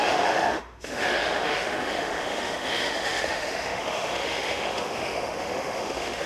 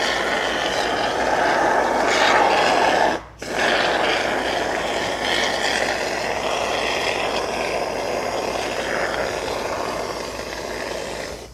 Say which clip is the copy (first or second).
first